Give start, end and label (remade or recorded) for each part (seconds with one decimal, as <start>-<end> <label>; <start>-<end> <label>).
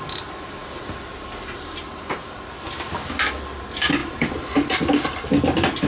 0.0-5.9 recorded